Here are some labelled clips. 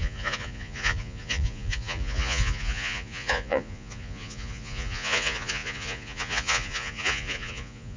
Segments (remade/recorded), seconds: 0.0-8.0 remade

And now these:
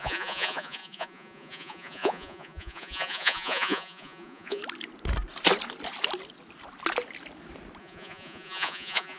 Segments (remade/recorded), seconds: 0.0-4.6 remade; 4.6-7.8 recorded; 7.8-9.2 remade

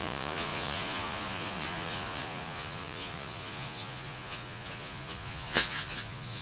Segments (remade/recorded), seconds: 0.0-6.4 remade

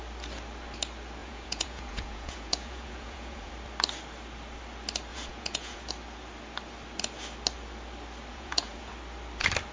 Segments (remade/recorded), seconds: 0.0-1.2 recorded; 1.2-3.5 remade; 3.5-5.1 recorded; 5.1-5.9 remade; 5.9-8.3 recorded; 8.3-8.9 remade; 8.9-9.7 recorded

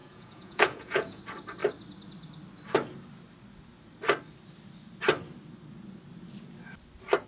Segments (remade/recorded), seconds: 0.0-1.2 remade; 1.2-7.3 recorded

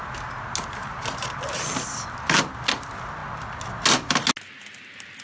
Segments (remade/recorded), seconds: 0.0-5.2 recorded